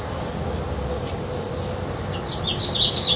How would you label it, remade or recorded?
recorded